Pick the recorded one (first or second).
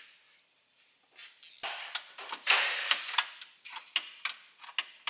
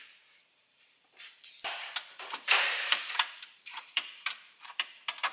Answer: first